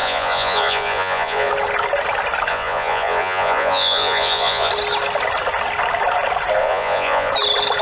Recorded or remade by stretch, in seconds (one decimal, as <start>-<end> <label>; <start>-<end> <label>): 0.0-1.5 remade; 1.5-2.5 recorded; 2.5-4.7 remade; 4.7-6.6 recorded; 6.6-7.3 remade; 7.3-7.8 recorded